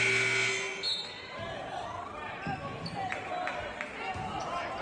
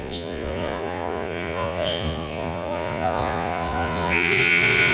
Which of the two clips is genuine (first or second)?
first